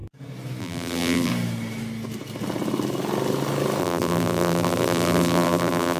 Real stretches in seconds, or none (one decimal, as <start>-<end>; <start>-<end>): 0.0-0.6; 1.3-3.8